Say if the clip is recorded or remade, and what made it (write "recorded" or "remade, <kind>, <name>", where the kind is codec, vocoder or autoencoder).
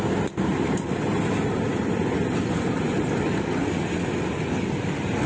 recorded